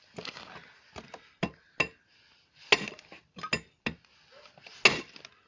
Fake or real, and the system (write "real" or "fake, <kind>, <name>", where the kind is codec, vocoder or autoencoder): real